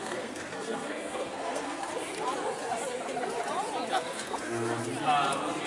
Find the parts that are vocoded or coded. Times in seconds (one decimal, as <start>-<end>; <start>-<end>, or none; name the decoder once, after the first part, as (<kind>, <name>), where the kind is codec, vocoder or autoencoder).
0.0-1.9 (codec, SNAC); 4.0-4.8